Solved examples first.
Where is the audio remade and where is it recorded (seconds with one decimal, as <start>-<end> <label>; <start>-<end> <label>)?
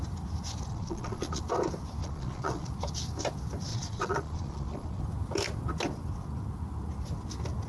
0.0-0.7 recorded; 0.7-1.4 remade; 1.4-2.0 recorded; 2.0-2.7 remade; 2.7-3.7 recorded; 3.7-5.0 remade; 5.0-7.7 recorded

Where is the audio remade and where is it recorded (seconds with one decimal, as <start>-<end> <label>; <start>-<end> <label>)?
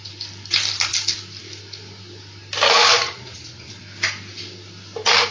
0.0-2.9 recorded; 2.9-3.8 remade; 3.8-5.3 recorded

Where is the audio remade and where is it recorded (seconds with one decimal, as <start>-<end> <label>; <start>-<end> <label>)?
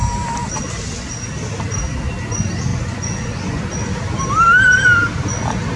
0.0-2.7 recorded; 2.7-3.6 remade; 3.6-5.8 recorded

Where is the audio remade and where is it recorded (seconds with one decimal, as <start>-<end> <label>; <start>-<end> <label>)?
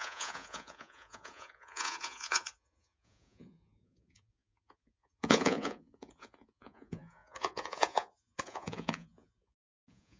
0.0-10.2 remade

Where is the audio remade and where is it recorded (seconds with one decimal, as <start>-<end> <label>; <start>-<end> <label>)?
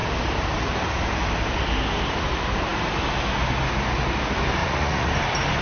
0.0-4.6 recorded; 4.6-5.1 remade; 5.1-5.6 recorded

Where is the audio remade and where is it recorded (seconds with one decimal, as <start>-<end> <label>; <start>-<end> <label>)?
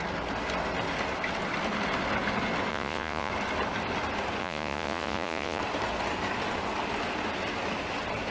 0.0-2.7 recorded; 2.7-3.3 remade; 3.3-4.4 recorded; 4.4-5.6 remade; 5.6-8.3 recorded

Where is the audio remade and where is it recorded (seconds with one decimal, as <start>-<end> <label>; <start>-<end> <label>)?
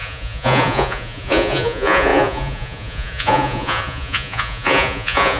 0.0-5.4 remade